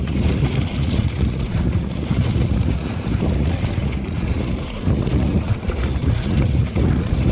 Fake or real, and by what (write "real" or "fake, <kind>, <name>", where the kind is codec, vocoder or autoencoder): fake, vocoder, Vocos